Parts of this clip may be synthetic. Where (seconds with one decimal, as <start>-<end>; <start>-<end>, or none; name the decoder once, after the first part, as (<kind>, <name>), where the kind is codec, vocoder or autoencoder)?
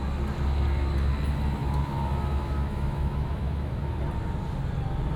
1.6-3.9 (autoencoder, DAC-VAE)